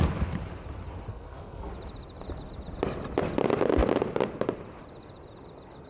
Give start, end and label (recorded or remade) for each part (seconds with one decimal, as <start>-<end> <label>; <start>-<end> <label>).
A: 0.0-1.1 recorded; 1.1-1.7 remade; 1.7-5.9 recorded